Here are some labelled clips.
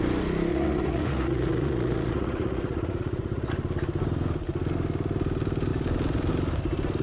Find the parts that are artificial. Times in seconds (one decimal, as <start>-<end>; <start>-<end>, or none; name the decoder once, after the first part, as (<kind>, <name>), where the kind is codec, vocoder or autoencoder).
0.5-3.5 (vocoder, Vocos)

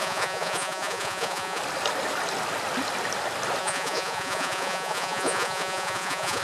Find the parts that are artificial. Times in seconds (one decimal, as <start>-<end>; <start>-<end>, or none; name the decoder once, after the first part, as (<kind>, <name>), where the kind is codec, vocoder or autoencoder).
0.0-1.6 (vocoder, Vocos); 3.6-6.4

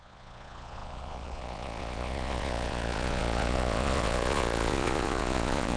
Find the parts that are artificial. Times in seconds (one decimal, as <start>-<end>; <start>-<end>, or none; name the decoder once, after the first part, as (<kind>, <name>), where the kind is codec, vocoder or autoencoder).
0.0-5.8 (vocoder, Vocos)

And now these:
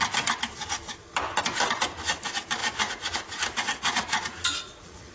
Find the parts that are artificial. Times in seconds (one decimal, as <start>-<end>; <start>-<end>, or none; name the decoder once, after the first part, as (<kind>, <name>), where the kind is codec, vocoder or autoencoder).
2.6-5.1 (vocoder, Vocos)